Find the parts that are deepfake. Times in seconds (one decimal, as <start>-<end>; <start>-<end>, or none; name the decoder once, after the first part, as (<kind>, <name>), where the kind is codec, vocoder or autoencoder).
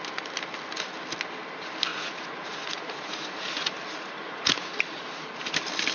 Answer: 1.9-5.4 (vocoder, Vocos)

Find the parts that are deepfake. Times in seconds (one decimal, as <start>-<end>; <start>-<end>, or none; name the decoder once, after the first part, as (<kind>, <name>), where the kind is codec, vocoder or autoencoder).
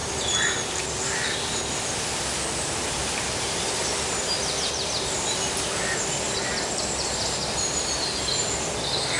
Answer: none